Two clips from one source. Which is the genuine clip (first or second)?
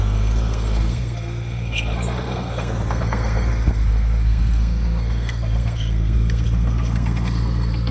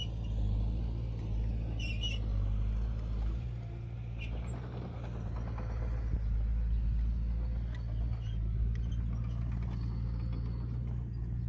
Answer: second